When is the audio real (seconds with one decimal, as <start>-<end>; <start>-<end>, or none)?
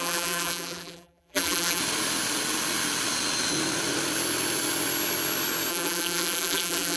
1.8-5.7